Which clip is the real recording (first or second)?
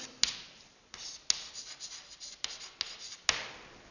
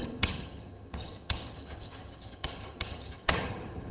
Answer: first